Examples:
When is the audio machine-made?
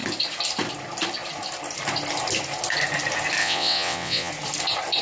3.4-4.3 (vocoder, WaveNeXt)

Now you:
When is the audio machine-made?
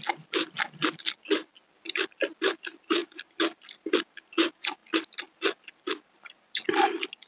none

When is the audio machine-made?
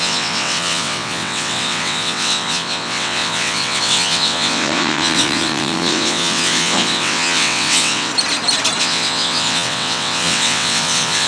0.0-8.1 (vocoder, WaveNeXt); 8.8-11.3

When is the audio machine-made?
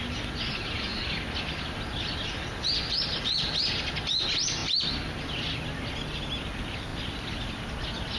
none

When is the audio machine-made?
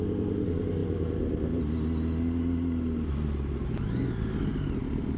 none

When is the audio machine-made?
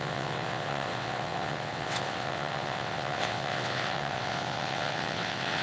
0.0-5.6 (vocoder, WaveNeXt)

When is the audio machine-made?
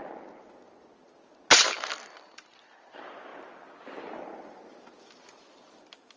none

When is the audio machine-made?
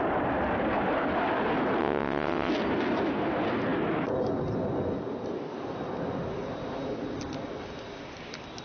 1.8-2.5 (vocoder, WaveNeXt)